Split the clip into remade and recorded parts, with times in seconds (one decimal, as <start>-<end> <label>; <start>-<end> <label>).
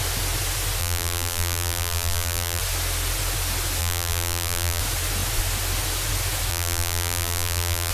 0.0-0.8 recorded; 0.8-2.6 remade; 2.6-3.8 recorded; 3.8-4.8 remade; 4.8-6.5 recorded; 6.5-7.9 remade